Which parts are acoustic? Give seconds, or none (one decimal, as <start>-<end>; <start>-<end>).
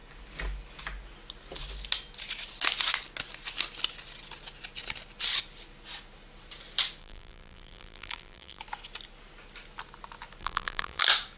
0.0-7.0; 8.6-10.4; 11.0-11.4